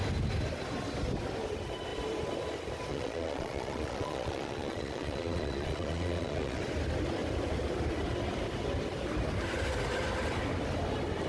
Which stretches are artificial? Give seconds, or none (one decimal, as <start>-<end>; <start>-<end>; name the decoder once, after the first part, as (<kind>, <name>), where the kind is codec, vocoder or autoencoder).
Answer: 2.9-6.6 (vocoder, Vocos)